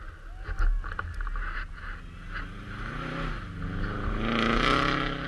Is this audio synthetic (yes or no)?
no